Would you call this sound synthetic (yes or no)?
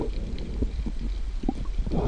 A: no